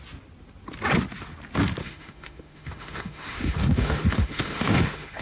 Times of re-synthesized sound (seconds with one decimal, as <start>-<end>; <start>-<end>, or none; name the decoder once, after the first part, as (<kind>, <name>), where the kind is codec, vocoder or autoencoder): 1.8-5.2 (autoencoder, DAC-VAE)